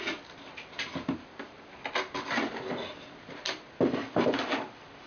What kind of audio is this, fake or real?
real